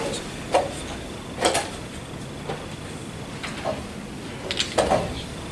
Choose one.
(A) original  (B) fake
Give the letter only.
A